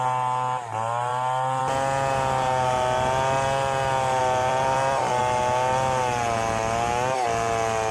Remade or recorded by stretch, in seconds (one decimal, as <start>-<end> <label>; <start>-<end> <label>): 0.0-1.1 recorded; 1.1-1.6 remade; 1.6-4.2 recorded; 4.2-5.2 remade; 5.2-7.9 recorded